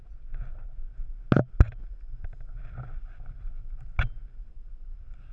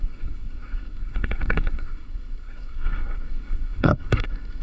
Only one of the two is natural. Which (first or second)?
first